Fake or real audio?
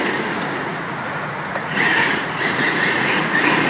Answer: fake